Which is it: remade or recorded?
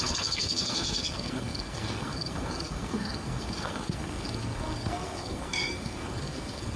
remade